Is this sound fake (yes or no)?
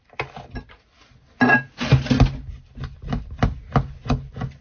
no